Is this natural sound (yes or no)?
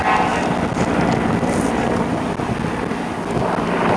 yes